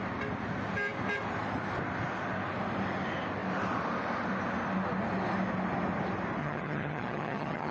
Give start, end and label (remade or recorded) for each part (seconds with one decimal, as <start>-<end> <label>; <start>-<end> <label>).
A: 0.0-6.4 recorded; 6.4-7.7 remade